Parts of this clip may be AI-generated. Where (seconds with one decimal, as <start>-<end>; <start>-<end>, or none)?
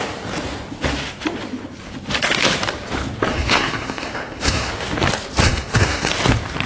3.3-4.7; 5.4-6.1